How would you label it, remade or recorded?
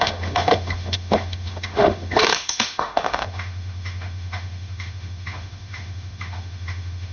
remade